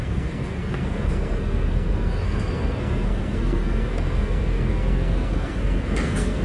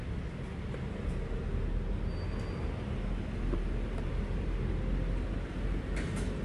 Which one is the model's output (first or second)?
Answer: first